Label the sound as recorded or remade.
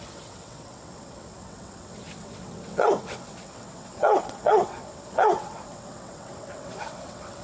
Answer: remade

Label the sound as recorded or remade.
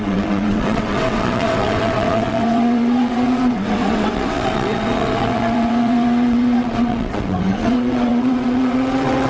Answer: remade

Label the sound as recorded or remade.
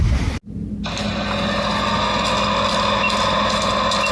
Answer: recorded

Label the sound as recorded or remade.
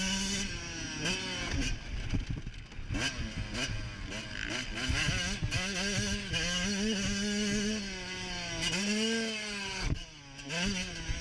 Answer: recorded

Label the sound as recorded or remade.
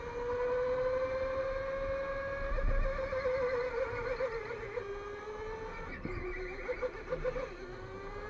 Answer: recorded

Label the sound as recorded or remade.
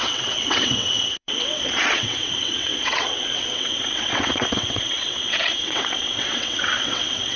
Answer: remade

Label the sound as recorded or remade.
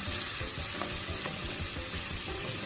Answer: remade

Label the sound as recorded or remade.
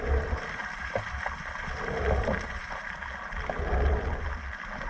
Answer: recorded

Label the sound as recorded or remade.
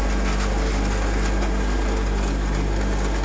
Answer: recorded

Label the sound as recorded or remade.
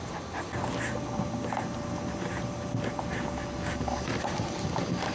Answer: recorded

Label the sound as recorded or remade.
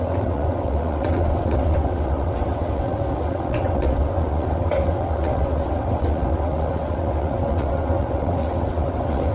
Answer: remade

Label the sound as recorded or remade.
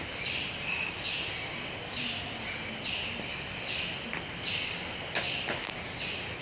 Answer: recorded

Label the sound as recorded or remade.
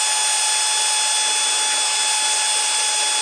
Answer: recorded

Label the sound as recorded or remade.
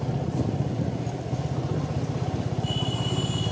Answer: recorded